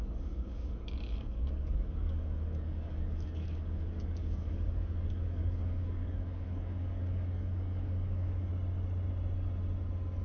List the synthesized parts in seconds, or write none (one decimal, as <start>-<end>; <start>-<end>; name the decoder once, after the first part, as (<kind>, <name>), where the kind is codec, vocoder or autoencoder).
0.0-8.5 (codec, DAC)